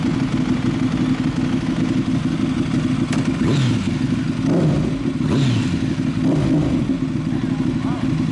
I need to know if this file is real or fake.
real